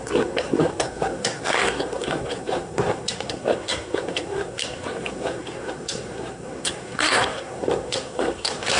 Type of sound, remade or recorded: remade